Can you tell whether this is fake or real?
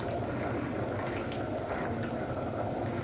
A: real